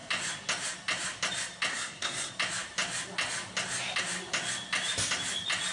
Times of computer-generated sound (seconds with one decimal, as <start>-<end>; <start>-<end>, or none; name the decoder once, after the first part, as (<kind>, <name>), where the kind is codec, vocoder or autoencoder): 1.7-2.3 (codec, SNAC)